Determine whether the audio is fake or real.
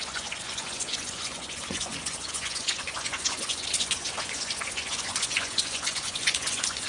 fake